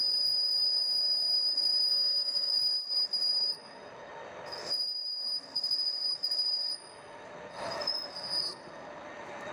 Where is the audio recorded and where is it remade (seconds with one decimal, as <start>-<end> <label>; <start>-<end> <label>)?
0.0-1.9 recorded; 1.9-2.5 remade; 2.5-9.5 recorded